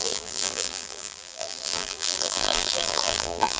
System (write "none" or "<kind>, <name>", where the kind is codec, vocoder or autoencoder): vocoder, BigVGAN v2